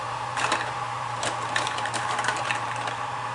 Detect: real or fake fake